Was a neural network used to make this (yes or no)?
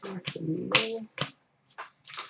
no